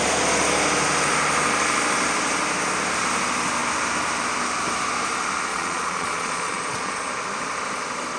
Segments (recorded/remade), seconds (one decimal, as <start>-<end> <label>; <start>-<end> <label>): 0.0-5.5 recorded; 5.5-7.1 remade; 7.1-8.2 recorded